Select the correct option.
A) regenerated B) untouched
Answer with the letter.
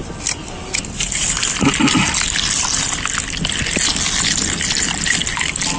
B